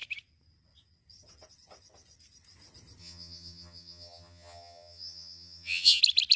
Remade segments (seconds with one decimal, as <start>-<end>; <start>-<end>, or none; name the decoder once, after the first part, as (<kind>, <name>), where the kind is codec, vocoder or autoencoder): 3.0-6.0 (vocoder, HiFi-GAN)